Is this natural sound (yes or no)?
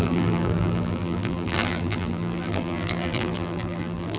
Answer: no